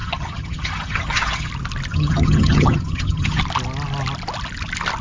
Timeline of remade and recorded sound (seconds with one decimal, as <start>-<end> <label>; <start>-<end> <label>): 0.0-1.5 remade; 1.5-1.9 recorded; 1.9-3.4 remade; 3.4-5.0 recorded

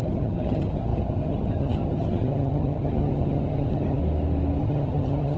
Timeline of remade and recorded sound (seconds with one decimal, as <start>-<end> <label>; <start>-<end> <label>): 0.0-4.0 remade; 4.0-4.6 recorded; 4.6-5.4 remade